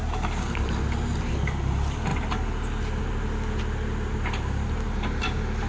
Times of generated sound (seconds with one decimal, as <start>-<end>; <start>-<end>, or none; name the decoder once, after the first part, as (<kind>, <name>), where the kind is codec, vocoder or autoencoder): none